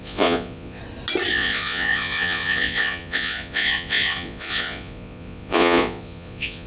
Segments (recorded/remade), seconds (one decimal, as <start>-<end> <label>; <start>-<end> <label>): 0.0-0.8 remade; 0.8-1.3 recorded; 1.3-6.7 remade